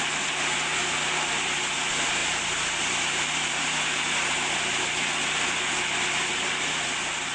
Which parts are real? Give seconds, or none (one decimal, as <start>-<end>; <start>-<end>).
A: 0.0-7.3